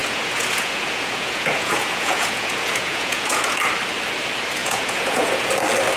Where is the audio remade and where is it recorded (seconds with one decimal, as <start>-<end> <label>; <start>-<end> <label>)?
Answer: 0.0-3.6 remade; 3.6-4.6 recorded; 4.6-5.5 remade; 5.5-6.0 recorded